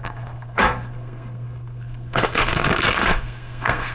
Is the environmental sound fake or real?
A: fake